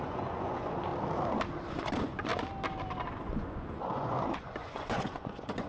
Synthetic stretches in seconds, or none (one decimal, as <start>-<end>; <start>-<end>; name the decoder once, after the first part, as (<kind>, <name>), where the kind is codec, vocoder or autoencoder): 0.0-0.9 (vocoder, Vocos); 1.7-2.3; 3.1-5.7